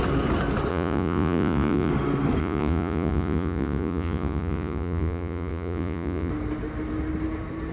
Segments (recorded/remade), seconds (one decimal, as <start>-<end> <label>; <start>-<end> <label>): 0.0-0.7 recorded; 0.7-1.9 remade; 1.9-2.4 recorded; 2.4-6.3 remade; 6.3-7.7 recorded